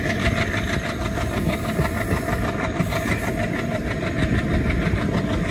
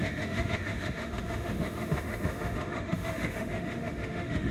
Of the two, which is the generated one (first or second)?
second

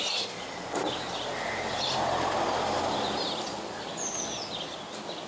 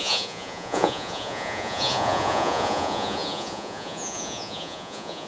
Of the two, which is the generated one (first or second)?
second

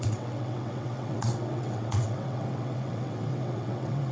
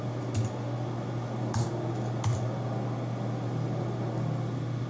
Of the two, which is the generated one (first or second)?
first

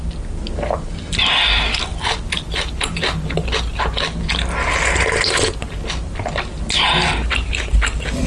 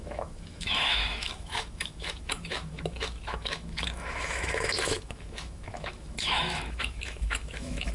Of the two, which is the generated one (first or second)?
second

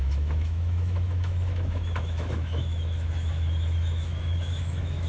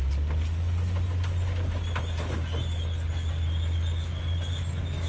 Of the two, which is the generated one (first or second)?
first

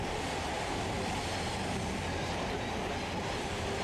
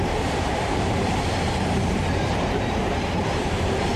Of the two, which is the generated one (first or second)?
second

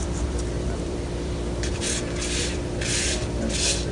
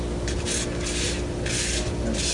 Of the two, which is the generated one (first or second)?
first